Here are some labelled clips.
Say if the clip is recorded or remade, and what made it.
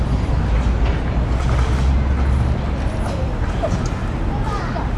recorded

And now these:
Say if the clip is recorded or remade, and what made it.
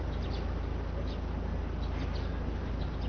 recorded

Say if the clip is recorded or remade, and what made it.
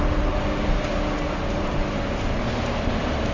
recorded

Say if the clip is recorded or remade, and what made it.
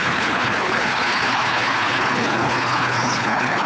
remade, codec, HILCodec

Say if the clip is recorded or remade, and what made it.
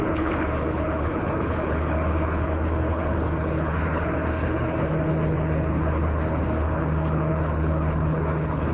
remade, codec, HILCodec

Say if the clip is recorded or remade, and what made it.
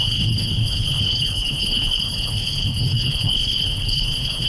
remade, codec, HILCodec